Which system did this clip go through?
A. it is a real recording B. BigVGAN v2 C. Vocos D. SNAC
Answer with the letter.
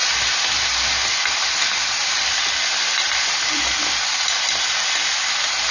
A